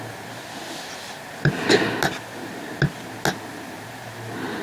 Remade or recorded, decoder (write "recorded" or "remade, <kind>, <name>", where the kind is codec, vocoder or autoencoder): recorded